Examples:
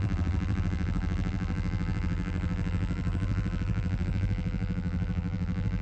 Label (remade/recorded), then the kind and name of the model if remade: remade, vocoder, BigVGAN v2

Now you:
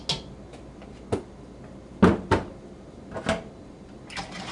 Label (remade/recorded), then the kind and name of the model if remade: recorded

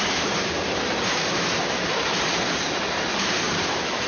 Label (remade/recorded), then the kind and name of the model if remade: remade, vocoder, BigVGAN v2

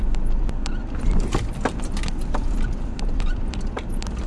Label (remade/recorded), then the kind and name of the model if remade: remade, vocoder, BigVGAN v2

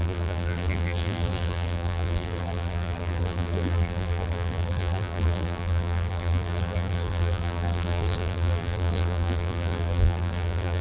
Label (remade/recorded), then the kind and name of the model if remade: remade, vocoder, BigVGAN v2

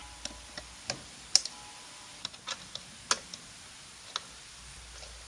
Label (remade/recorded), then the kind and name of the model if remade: recorded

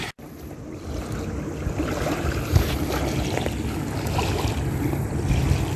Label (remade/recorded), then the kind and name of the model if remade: recorded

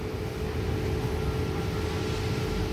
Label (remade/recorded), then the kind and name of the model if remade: recorded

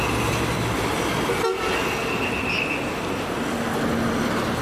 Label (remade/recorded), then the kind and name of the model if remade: recorded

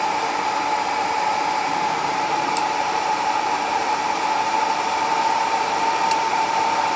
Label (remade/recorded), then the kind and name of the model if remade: remade, vocoder, BigVGAN v2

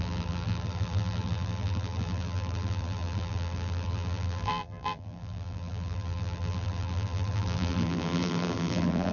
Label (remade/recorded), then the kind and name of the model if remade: remade, vocoder, BigVGAN v2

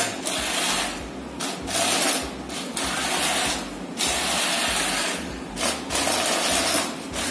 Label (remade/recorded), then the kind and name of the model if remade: recorded